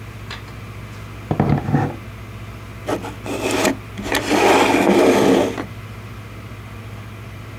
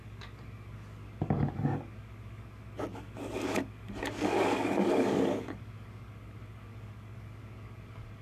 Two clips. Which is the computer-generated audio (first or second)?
second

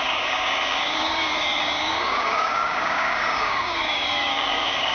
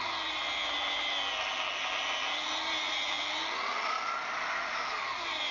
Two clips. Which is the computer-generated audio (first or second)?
first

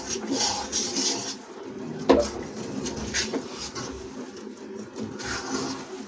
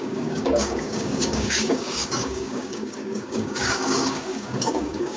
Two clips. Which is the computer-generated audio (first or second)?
second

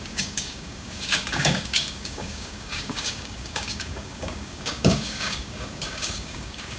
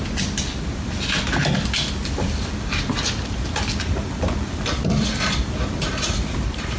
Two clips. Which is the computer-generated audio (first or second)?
first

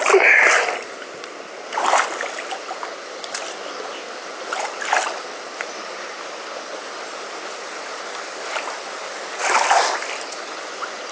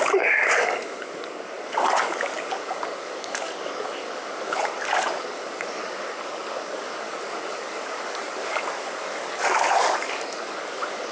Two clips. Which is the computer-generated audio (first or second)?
second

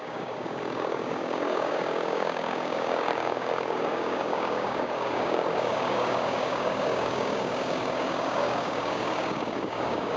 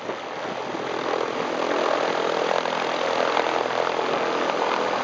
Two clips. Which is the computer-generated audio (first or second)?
first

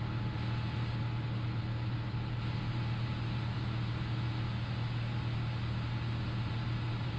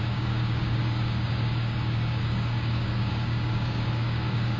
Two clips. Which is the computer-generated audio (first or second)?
second